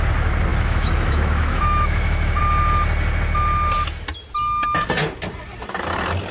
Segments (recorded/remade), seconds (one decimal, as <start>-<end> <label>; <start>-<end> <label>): 0.0-0.5 recorded; 0.5-2.4 remade; 2.4-6.3 recorded

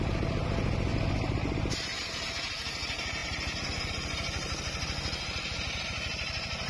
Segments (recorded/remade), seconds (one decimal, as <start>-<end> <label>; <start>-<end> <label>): 0.0-0.9 recorded; 0.9-1.5 remade; 1.5-3.2 recorded; 3.2-3.9 remade; 3.9-6.7 recorded

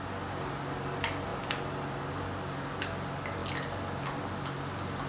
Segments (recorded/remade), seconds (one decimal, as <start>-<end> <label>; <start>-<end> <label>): 0.0-5.1 recorded